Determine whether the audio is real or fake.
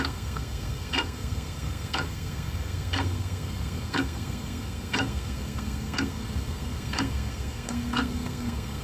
fake